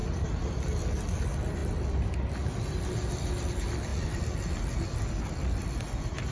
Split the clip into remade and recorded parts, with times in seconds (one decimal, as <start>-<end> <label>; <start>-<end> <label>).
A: 0.0-0.5 remade; 0.5-1.6 recorded; 1.6-3.5 remade; 3.5-6.3 recorded